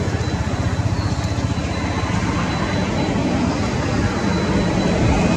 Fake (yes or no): no